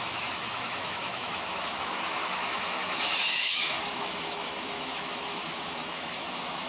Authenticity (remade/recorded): remade